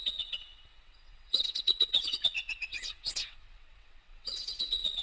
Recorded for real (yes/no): no